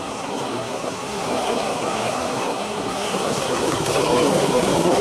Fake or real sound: fake